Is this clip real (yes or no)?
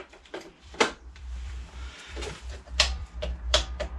no